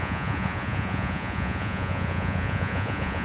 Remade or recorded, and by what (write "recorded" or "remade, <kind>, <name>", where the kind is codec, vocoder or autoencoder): remade, vocoder, Vocos